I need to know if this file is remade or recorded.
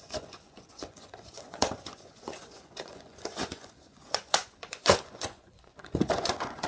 remade